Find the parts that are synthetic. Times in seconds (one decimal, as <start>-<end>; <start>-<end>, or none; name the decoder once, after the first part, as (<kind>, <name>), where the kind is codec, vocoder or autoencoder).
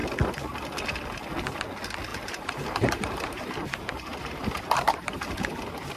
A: 2.1-6.0 (vocoder, BigVGAN v2)